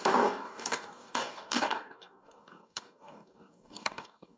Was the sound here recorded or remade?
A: remade